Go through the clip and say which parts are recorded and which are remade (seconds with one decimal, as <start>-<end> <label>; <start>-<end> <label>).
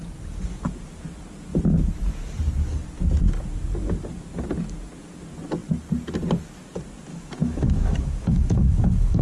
0.0-7.1 recorded; 7.1-9.2 remade